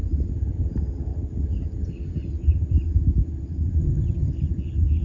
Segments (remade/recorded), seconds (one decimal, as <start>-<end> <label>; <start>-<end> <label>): 0.0-3.8 recorded; 3.8-4.3 remade; 4.3-5.0 recorded